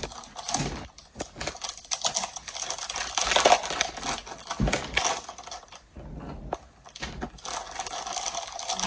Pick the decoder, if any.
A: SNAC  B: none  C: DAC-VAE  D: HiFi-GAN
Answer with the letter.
B